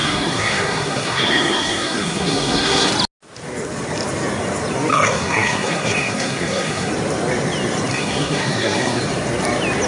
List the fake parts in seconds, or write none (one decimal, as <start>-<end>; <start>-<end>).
0.0-2.9; 4.9-6.9; 7.9-9.0